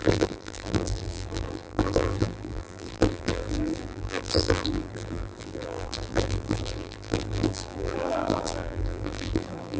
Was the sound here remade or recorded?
remade